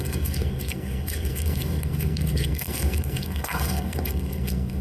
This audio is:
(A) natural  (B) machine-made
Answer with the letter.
B